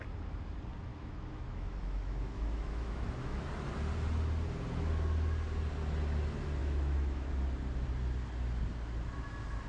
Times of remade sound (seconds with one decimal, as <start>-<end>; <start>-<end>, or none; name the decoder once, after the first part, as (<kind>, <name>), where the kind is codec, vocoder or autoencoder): 0.9-3.5 (autoencoder, DAC-VAE); 6.6-7.3